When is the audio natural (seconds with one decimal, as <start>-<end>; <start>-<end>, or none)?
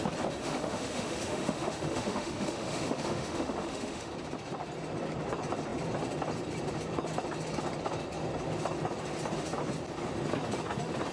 0.0-0.4; 4.1-11.1